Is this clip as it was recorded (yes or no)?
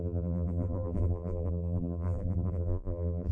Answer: no